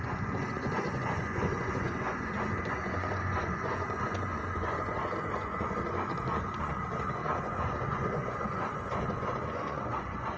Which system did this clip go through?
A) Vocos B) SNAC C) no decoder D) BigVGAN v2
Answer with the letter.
A